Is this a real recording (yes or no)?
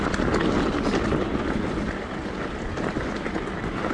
yes